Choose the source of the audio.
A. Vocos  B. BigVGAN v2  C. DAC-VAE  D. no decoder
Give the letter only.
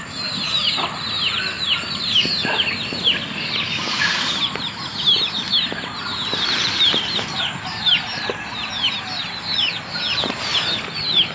D